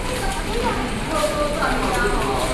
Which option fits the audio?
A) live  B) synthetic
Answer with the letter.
A